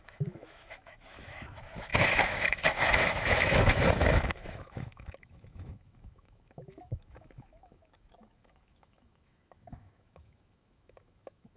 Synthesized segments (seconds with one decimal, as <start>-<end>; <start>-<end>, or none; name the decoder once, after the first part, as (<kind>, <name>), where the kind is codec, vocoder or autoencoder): 0.0-11.6 (autoencoder, DAC-VAE)